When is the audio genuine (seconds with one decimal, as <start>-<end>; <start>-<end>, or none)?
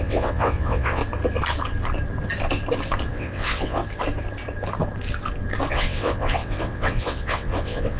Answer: 1.0-3.1; 3.8-5.7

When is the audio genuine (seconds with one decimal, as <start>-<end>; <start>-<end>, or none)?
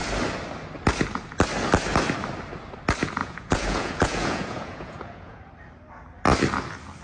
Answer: 0.0-3.2; 5.4-7.0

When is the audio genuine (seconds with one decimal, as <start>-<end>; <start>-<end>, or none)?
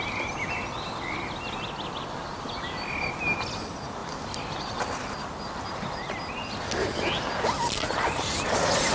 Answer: 0.0-4.0; 6.3-8.9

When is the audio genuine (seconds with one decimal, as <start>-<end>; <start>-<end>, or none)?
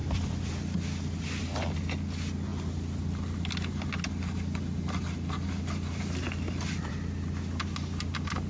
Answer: 0.0-8.5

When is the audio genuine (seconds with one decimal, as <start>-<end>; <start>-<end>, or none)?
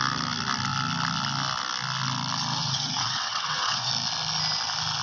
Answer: 0.0-2.6; 3.9-5.0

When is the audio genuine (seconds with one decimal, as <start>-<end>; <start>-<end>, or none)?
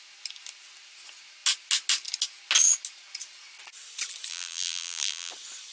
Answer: 0.0-4.3; 5.3-5.7